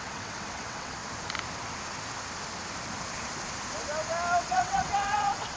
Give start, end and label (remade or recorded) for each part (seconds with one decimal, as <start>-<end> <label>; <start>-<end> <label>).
0.0-1.0 remade; 1.0-4.4 recorded; 4.4-5.6 remade